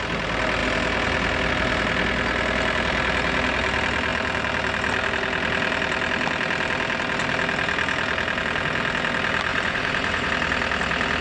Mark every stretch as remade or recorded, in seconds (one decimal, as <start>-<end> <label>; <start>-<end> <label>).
0.0-9.5 recorded; 9.5-10.3 remade; 10.3-11.2 recorded